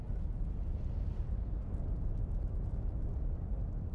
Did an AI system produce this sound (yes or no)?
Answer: no